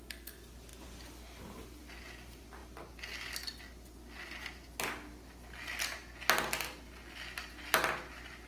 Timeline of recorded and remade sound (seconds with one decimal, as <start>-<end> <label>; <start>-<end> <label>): 0.0-8.5 recorded